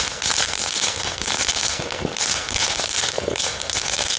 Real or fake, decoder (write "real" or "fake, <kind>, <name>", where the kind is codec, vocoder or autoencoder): fake, codec, SNAC